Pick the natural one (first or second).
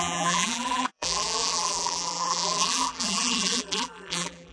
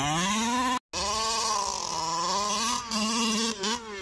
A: second